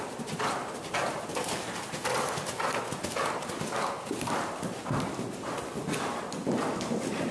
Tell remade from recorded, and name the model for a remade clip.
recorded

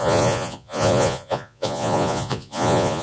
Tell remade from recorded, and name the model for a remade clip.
remade, vocoder, Vocos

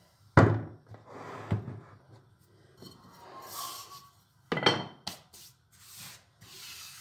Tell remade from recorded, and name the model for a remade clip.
recorded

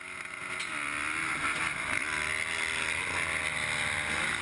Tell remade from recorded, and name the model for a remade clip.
recorded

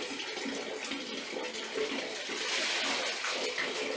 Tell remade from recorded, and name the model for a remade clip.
recorded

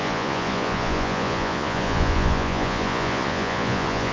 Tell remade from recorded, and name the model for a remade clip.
remade, vocoder, Vocos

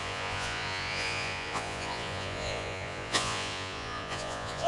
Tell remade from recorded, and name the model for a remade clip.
remade, vocoder, Vocos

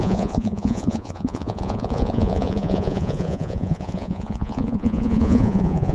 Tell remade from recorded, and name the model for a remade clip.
remade, vocoder, Vocos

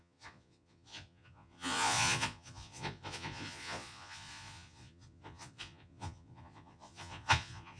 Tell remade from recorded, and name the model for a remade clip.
remade, vocoder, Vocos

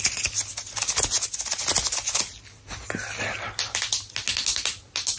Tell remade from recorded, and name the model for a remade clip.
recorded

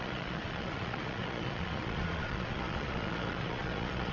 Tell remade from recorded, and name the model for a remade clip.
remade, vocoder, Vocos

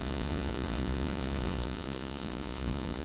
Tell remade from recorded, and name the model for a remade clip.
remade, vocoder, Vocos